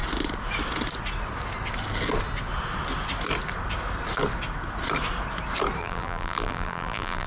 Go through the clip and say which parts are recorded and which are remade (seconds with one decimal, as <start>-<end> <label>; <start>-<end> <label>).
0.0-5.8 recorded; 5.8-7.3 remade